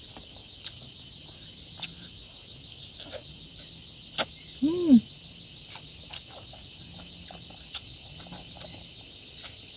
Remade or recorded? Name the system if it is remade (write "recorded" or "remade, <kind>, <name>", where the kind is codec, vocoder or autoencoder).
recorded